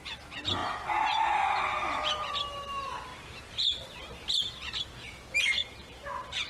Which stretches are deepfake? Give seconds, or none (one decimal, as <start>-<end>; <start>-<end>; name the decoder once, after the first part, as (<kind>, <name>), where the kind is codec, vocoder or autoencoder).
3.1-4.5 (vocoder, BigVGAN v2); 5.6-6.5